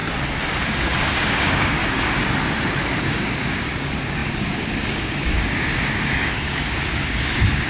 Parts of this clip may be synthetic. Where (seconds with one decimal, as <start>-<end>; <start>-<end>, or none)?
0.5-1.8; 3.0-7.7